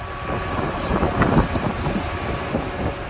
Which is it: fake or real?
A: real